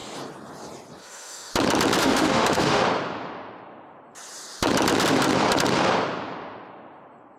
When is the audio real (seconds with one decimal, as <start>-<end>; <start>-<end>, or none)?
0.0-1.0; 1.5-2.0; 2.8-7.4